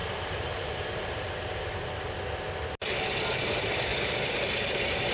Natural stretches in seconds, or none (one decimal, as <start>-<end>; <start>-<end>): 1.8-3.9